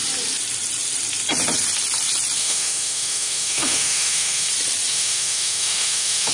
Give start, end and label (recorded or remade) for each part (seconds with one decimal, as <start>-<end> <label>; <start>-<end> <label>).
0.0-2.4 recorded; 2.4-4.5 remade; 4.5-4.9 recorded; 4.9-6.3 remade